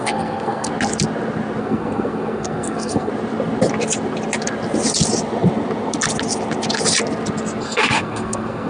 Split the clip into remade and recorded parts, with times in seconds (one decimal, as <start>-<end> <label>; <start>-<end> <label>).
0.0-0.7 remade; 0.7-1.6 recorded; 1.6-3.1 remade; 3.1-7.6 recorded; 7.6-8.7 remade